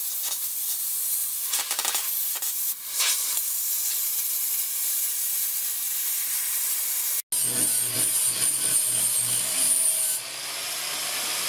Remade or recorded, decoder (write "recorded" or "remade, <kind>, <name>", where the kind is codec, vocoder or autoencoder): recorded